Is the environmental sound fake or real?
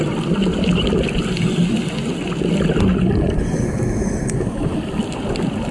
real